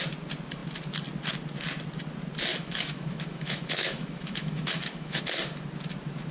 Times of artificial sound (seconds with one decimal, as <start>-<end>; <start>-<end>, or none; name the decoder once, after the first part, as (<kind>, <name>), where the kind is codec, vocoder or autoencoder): 2.5-5.2 (autoencoder, DAC-VAE)

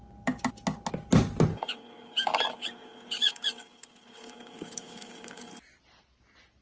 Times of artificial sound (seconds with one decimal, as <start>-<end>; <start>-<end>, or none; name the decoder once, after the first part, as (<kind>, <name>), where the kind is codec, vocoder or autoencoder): 1.5-5.5 (codec, DAC)

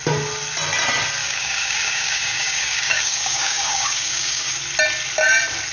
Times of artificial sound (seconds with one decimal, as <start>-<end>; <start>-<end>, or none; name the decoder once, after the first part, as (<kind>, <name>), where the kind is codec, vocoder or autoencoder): 1.2-4.6 (codec, DAC)